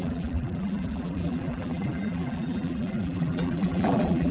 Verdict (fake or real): fake